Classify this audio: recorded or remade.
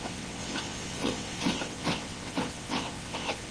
remade